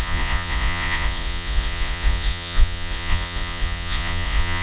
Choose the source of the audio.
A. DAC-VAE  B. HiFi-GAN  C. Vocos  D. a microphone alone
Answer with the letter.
C